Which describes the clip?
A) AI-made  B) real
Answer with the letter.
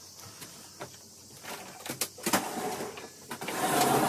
B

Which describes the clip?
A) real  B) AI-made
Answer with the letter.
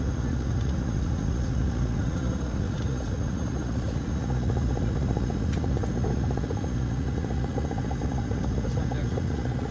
B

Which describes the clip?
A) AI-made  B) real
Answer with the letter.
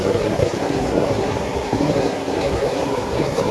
A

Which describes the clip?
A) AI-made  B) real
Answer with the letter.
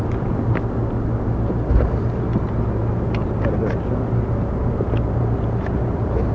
B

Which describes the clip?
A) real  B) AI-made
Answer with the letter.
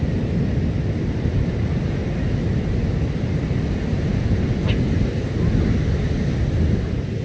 A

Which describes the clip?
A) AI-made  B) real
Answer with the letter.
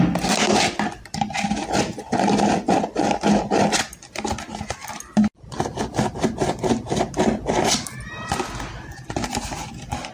B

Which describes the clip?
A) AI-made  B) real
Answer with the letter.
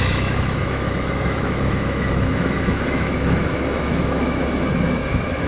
A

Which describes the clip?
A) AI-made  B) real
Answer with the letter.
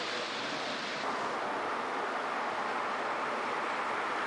B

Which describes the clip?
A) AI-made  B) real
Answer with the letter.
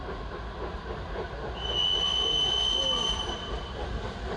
B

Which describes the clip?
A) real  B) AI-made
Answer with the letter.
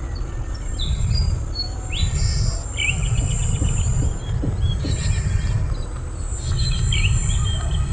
A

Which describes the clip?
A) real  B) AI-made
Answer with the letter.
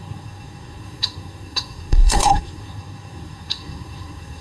B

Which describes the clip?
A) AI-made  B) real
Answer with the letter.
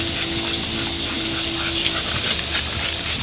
B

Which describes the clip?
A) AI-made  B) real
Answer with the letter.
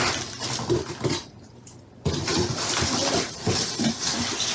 B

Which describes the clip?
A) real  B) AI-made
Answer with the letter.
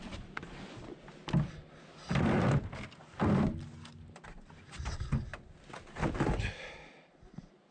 A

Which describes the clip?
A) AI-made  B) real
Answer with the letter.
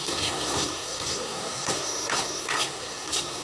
A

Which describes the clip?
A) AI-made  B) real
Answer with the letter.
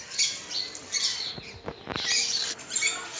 B